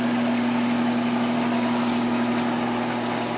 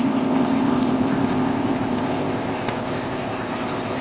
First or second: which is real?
first